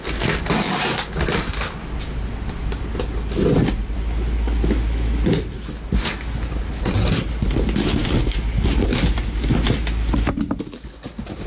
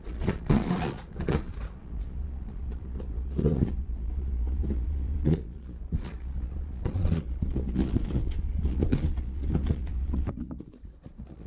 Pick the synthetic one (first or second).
second